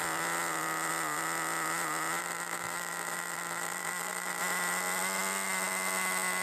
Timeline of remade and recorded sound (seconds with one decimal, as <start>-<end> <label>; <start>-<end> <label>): 0.0-2.2 recorded; 2.2-4.4 remade; 4.4-6.4 recorded